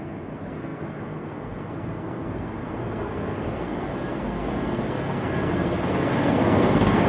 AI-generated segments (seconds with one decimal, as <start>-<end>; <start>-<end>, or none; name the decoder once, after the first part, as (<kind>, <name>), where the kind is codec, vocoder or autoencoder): 0.0-7.1 (codec, SNAC)